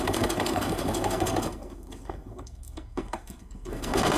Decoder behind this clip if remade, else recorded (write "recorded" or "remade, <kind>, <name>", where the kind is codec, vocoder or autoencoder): remade, codec, SNAC